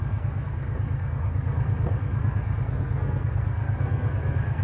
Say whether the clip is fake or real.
fake